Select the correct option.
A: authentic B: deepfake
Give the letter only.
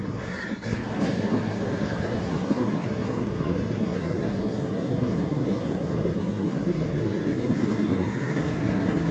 B